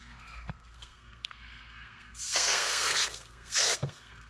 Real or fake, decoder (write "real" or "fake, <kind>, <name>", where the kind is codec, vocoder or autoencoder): fake, codec, SNAC